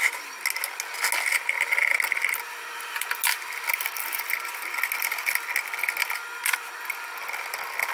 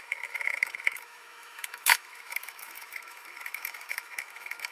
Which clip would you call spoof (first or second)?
second